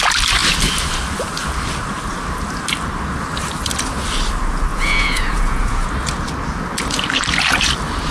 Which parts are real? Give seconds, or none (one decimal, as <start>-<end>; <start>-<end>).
0.0-4.7; 5.9-8.1